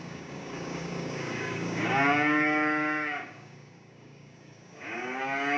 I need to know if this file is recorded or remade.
remade